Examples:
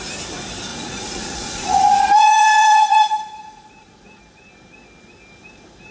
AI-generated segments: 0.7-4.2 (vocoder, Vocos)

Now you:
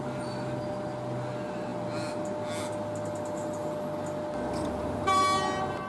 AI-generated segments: none

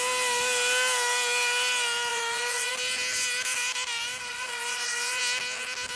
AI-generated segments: 2.1-2.7 (vocoder, Vocos); 4.3-5.2

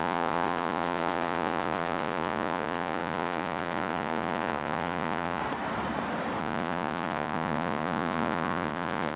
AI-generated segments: 0.0-5.4 (vocoder, Vocos); 6.4-9.2

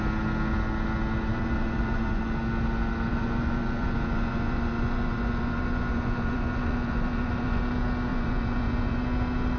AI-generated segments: 1.3-2.2 (vocoder, Vocos); 3.1-7.6; 8.1-9.0